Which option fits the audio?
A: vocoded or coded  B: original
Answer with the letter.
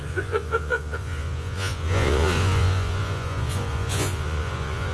A